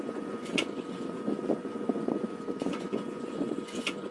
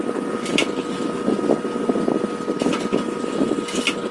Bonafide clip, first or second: second